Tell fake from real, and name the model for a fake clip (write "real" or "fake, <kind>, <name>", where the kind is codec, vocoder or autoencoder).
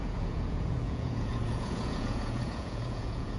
fake, vocoder, Vocos